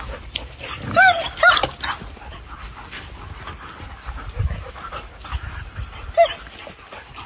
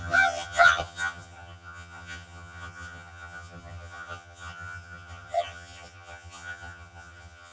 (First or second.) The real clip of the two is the first